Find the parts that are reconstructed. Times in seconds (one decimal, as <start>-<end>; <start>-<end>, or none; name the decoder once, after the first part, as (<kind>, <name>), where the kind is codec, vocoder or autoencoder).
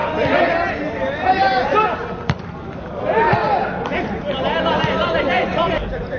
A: none